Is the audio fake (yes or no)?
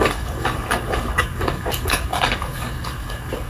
yes